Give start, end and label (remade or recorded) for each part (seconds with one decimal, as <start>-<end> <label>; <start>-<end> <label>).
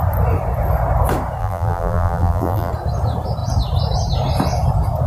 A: 0.0-1.4 recorded; 1.4-2.7 remade; 2.7-5.1 recorded